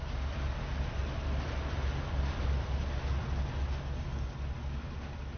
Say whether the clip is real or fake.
real